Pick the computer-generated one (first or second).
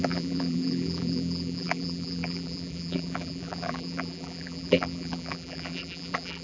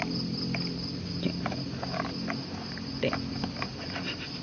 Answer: first